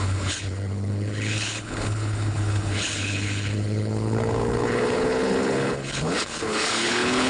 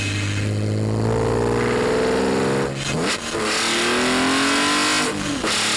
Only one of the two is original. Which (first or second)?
second